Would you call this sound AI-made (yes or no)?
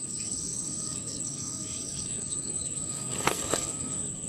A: yes